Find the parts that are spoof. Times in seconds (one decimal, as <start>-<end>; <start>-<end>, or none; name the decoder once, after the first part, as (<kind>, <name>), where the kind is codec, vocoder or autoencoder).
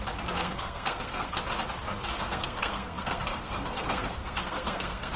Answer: 0.4-1.4 (codec, SNAC); 2.1-5.2